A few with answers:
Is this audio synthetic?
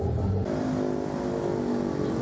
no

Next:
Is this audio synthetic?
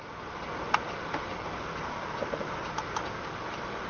no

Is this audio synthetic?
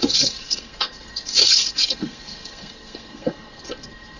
yes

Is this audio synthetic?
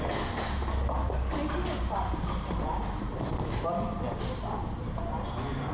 no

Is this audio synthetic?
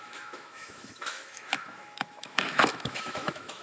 yes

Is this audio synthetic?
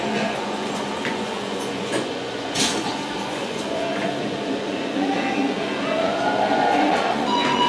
yes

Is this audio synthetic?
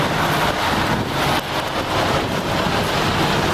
no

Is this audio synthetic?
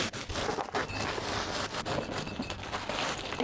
no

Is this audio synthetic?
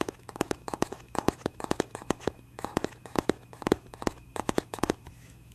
yes